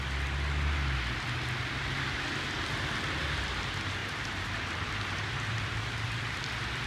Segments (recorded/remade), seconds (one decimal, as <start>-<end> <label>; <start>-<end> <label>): 0.0-4.0 recorded; 4.0-6.4 remade; 6.4-6.9 recorded